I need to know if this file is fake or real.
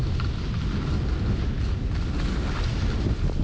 real